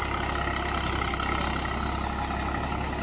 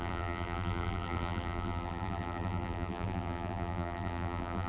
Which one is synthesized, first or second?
second